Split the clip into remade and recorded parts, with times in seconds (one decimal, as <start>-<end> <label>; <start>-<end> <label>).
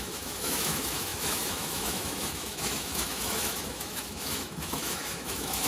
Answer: 0.0-5.7 remade